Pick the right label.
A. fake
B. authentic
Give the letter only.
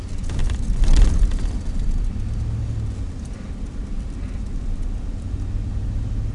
B